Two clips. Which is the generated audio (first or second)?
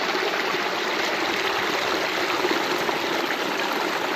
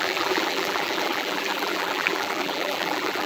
second